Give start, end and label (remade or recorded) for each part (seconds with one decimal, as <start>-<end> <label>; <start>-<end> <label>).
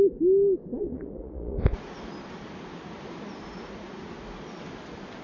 0.0-0.7 recorded; 0.7-2.1 remade; 2.1-3.4 recorded; 3.4-4.4 remade; 4.4-5.2 recorded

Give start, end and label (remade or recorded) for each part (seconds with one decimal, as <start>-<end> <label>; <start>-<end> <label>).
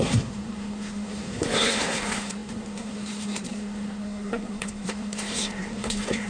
0.0-6.3 remade